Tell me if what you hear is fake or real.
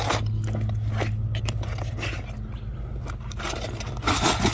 real